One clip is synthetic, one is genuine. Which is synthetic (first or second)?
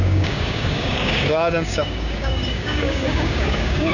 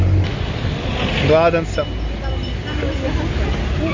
first